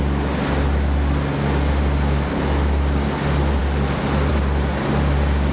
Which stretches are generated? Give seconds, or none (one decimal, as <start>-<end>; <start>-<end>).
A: none